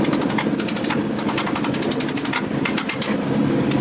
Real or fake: real